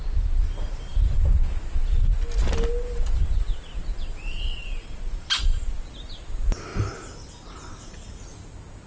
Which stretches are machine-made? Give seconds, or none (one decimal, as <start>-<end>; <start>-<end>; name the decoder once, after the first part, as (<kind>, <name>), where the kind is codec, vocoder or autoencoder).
4.6-6.2 (vocoder, BigVGAN v2)